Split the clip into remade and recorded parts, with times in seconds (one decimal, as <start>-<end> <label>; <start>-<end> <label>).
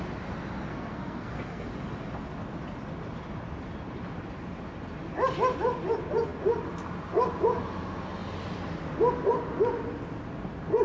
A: 0.0-0.7 recorded; 0.7-1.7 remade; 1.7-10.8 recorded